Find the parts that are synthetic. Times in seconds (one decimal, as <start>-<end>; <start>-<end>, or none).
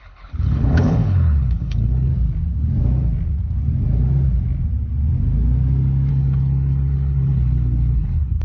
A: 0.0-2.1; 6.1-8.4